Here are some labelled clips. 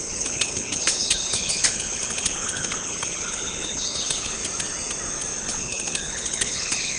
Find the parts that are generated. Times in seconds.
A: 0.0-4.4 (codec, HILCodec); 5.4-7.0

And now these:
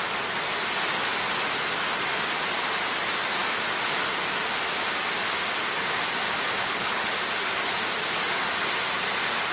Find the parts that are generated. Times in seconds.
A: 6.6-7.1 (codec, HILCodec)

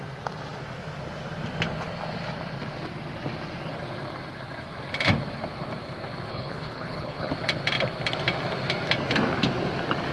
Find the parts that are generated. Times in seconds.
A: 6.3-7.3 (codec, HILCodec)

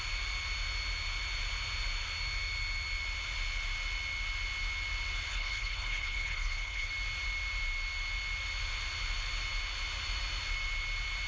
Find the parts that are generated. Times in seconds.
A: 5.3-6.9 (codec, HILCodec)